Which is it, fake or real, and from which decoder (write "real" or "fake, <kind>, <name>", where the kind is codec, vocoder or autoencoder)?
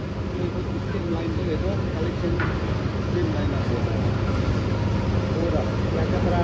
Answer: real